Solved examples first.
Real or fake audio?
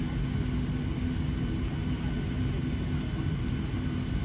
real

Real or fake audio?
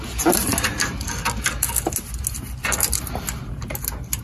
real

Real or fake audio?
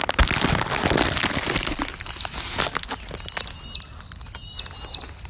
real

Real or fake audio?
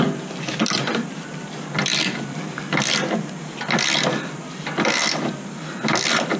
fake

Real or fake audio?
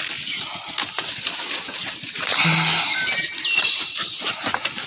real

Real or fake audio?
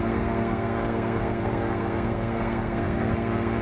fake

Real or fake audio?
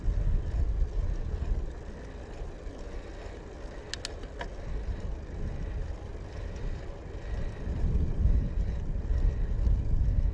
real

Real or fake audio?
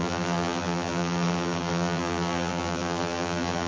fake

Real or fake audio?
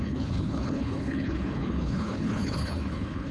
fake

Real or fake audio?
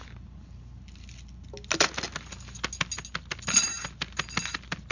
real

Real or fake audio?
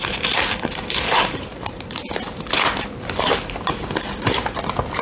real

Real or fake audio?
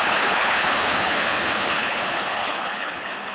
fake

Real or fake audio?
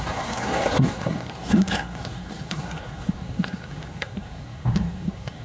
fake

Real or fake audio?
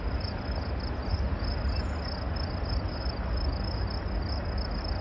real